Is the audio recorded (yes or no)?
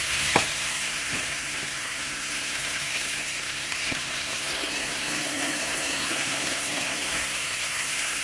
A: no